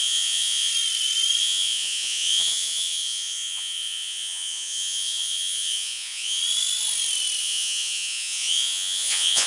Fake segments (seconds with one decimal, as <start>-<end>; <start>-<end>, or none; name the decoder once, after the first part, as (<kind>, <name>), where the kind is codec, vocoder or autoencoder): 0.0-0.7 (vocoder, Vocos); 1.4-6.4; 7.4-9.5